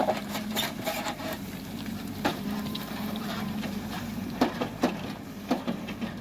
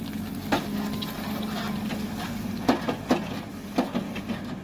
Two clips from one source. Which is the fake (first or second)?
first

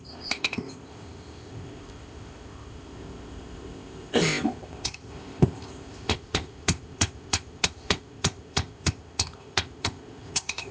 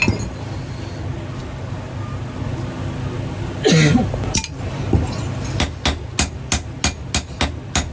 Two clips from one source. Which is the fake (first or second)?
first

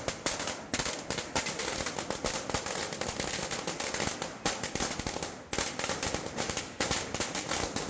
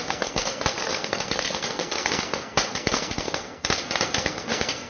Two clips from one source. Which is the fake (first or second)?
second